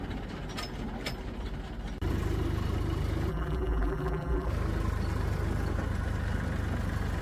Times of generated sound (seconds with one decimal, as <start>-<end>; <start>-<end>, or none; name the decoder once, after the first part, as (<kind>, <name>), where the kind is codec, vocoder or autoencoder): 3.3-4.5 (vocoder, BigVGAN v2)